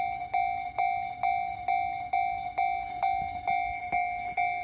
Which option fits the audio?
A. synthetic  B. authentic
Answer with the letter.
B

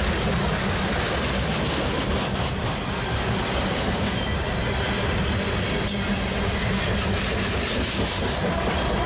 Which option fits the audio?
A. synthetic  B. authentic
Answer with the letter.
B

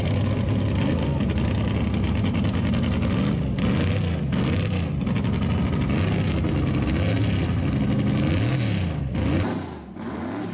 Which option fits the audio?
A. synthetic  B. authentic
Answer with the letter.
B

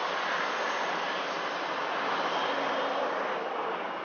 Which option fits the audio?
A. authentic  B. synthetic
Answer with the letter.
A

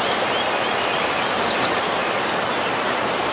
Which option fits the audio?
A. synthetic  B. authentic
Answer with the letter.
A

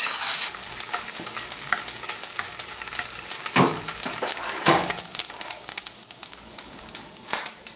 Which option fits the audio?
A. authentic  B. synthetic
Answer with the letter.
B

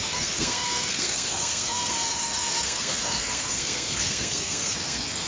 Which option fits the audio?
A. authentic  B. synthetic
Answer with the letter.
B